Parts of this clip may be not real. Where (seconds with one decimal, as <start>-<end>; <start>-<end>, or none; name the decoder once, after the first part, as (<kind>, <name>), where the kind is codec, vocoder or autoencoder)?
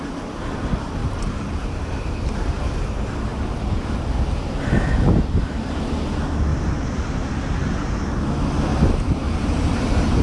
1.0-2.5 (vocoder, BigVGAN v2); 3.3-5.8; 6.5-8.2; 8.7-10.2